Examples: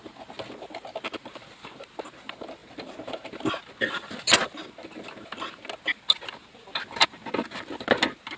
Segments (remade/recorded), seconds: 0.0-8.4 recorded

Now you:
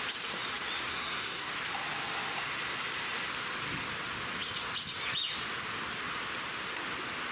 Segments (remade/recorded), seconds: 0.0-0.9 recorded; 0.9-1.5 remade; 1.5-7.3 recorded

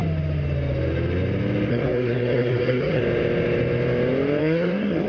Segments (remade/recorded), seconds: 0.0-1.7 recorded; 1.7-3.0 remade; 3.0-4.4 recorded; 4.4-5.1 remade

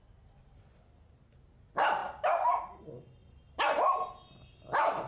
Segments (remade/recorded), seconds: 0.0-5.1 recorded

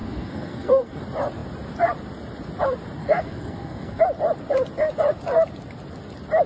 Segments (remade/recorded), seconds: 0.0-1.0 remade; 1.0-3.0 recorded; 3.0-4.0 remade; 4.0-6.5 recorded

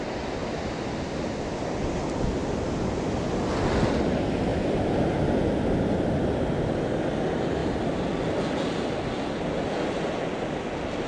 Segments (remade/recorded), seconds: 0.0-11.1 recorded